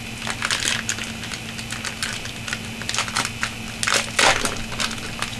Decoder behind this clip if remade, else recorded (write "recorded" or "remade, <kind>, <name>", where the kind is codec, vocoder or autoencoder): recorded